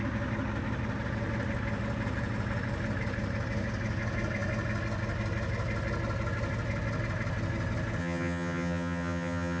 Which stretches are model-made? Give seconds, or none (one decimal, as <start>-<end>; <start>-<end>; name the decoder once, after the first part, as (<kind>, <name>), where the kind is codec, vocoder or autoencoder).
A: 8.0-9.6 (vocoder, HiFi-GAN)